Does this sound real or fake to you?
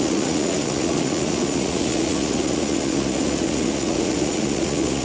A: fake